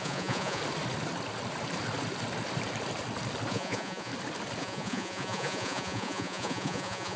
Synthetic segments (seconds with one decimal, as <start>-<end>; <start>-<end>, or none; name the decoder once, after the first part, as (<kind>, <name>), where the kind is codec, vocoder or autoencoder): 0.0-0.6 (vocoder, Vocos); 3.5-4.1; 4.6-7.2